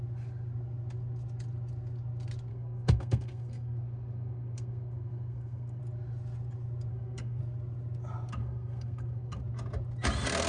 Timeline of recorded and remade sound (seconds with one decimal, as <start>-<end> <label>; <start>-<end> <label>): 0.0-2.5 recorded; 2.5-5.8 remade; 5.8-6.9 recorded; 6.9-7.4 remade; 7.4-8.4 recorded; 8.4-9.4 remade; 9.4-10.5 recorded